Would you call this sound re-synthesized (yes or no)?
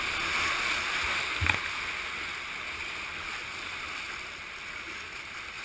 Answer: no